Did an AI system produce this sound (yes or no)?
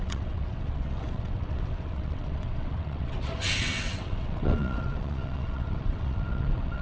yes